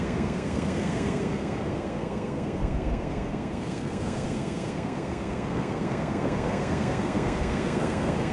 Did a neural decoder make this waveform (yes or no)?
yes